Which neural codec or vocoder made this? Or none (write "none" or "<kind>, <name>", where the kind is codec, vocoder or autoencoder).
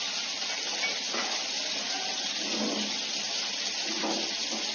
none